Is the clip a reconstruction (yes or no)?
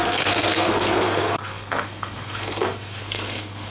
yes